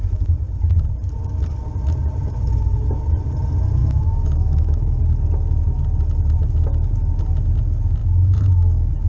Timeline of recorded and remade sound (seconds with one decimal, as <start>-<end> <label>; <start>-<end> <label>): 0.0-3.8 recorded; 3.8-5.0 remade; 5.0-8.0 recorded; 8.0-9.1 remade